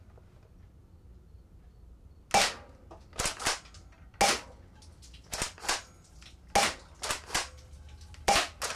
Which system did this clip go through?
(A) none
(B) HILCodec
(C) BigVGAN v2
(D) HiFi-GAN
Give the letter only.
A